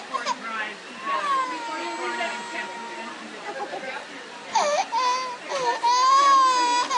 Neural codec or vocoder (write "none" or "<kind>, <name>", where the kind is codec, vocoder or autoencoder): none